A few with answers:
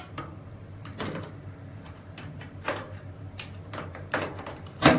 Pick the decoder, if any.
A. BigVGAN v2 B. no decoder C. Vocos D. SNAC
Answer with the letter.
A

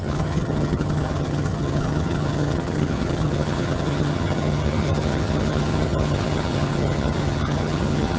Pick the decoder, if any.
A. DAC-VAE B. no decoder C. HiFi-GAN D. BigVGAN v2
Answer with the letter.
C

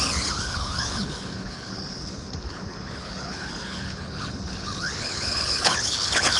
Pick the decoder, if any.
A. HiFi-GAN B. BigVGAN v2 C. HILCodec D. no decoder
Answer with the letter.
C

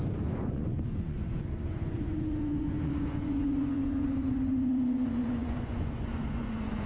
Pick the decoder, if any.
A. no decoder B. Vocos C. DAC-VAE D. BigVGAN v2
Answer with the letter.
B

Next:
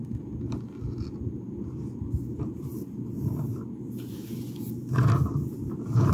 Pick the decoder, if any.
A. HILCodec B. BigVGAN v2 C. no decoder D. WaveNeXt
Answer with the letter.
B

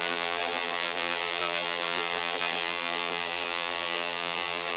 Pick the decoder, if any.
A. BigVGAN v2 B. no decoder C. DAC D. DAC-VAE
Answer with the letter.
A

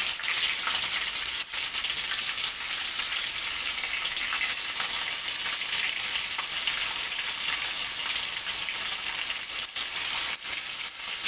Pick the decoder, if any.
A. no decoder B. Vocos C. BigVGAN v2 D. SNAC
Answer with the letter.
A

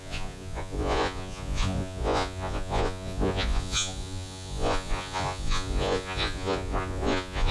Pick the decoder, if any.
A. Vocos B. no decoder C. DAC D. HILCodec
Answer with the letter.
A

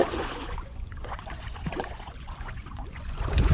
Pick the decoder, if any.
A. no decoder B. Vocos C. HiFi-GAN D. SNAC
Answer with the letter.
B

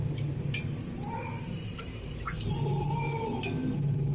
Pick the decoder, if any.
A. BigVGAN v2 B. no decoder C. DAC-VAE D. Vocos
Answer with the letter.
B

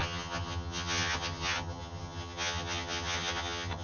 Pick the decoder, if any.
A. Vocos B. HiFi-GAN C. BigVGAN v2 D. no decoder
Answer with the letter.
B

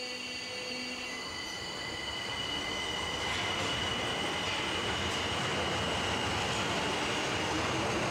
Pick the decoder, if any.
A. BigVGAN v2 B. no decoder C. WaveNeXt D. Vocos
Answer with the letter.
B